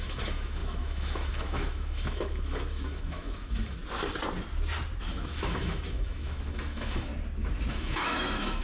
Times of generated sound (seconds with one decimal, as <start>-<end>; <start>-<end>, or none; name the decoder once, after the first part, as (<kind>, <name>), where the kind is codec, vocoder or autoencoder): 0.0-3.8 (autoencoder, DAC-VAE); 5.0-7.1; 7.7-8.6